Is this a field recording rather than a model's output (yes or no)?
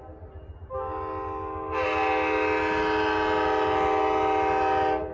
yes